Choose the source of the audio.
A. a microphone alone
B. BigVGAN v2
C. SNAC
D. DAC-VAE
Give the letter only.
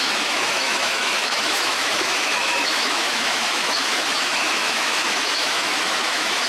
D